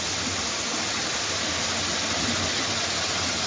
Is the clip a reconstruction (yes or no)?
no